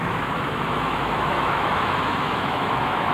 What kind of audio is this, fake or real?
fake